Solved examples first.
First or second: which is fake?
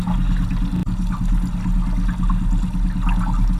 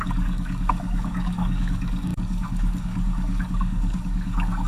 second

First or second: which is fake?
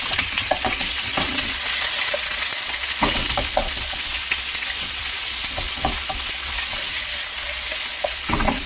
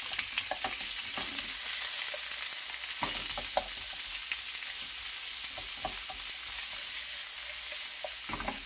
first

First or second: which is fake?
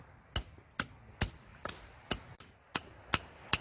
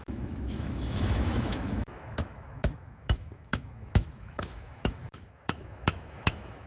second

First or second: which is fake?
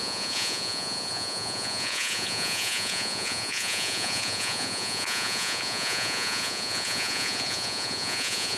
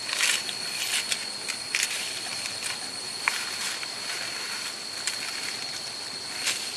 first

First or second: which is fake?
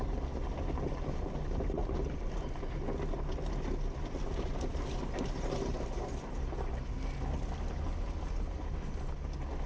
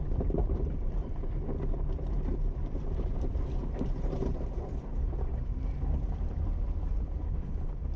second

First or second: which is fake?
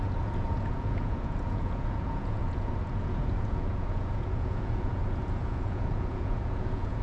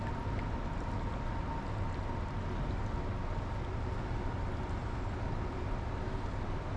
first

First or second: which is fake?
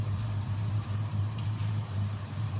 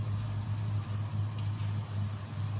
first